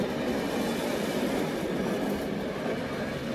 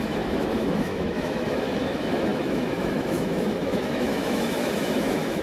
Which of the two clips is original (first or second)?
first